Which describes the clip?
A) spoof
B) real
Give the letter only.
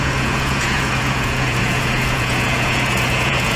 A